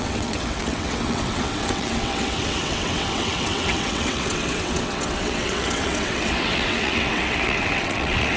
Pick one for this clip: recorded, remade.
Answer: remade